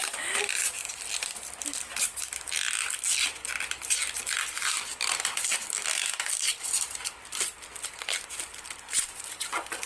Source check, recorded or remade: remade